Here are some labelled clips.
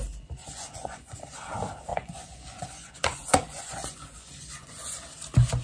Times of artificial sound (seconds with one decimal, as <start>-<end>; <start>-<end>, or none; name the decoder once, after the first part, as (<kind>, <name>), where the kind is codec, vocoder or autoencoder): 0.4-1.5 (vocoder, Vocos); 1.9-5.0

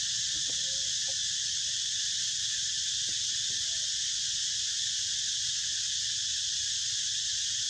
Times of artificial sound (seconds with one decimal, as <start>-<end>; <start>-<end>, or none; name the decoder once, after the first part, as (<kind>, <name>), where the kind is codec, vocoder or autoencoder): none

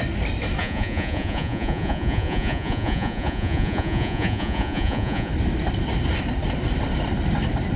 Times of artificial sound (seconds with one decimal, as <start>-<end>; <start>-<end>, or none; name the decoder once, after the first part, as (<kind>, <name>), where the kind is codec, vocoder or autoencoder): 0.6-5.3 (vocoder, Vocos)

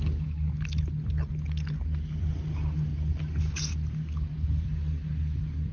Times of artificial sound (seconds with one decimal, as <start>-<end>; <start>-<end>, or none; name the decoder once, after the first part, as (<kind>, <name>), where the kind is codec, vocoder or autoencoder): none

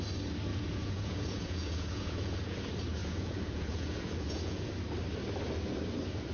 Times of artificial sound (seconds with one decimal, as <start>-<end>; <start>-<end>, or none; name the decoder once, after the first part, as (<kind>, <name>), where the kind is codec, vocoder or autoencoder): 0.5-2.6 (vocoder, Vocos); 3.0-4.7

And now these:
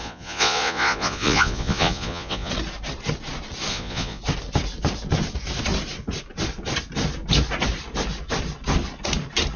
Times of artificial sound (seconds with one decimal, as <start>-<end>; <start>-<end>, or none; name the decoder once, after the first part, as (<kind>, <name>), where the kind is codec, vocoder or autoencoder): 0.0-2.5 (vocoder, Vocos); 3.7-4.2